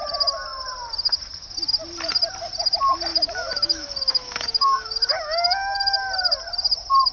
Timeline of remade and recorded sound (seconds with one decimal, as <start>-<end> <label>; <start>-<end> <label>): 0.0-3.1 recorded; 3.1-6.0 remade; 6.0-7.1 recorded